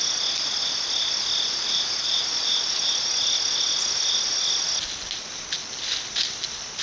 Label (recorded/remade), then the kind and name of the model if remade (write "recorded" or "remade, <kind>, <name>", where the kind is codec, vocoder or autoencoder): recorded